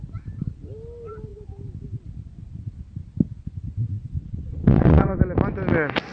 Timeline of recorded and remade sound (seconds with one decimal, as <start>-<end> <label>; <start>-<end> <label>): 0.0-4.2 recorded; 4.2-5.2 remade; 5.2-6.1 recorded